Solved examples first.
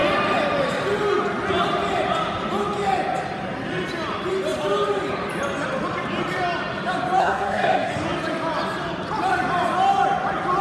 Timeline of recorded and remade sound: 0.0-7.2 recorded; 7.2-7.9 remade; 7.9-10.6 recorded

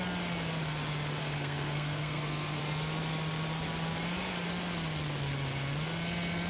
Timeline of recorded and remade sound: 0.0-1.2 recorded; 1.2-2.6 remade; 2.6-6.5 recorded

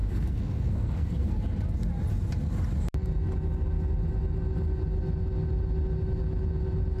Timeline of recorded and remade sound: 0.0-1.4 remade; 1.4-7.0 recorded

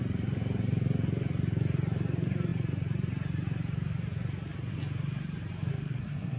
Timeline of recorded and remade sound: 0.0-5.7 recorded; 5.7-6.4 remade

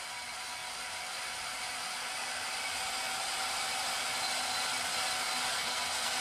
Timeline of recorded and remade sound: 0.0-5.5 recorded; 5.5-6.2 remade

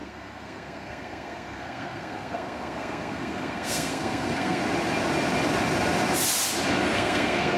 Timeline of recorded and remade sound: 0.0-4.6 remade; 4.6-6.9 recorded; 6.9-7.6 remade

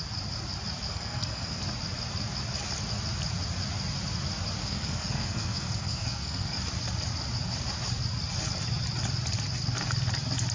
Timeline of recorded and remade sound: 0.0-0.9 recorded; 0.9-1.6 remade; 1.6-4.6 recorded; 4.6-6.6 remade; 6.6-10.5 recorded